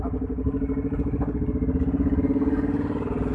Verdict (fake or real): real